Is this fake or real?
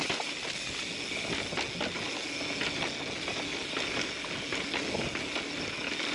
real